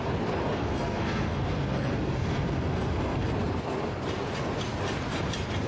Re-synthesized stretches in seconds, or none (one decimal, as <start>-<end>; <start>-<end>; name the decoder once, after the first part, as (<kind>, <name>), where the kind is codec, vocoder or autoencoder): 0.5-3.3 (codec, SNAC)